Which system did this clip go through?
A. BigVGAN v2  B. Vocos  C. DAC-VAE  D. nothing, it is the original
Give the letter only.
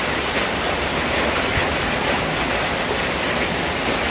D